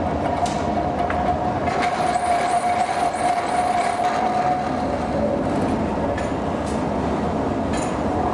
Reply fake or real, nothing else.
real